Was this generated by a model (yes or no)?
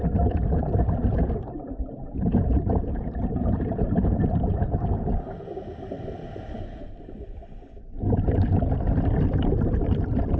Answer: yes